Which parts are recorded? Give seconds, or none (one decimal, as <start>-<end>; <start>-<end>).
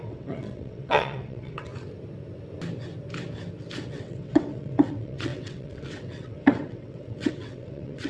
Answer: 1.7-3.9